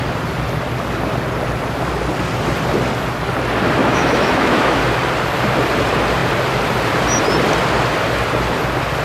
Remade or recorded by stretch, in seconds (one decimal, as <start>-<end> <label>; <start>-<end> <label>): 0.0-3.8 recorded; 3.8-4.8 remade; 4.8-9.0 recorded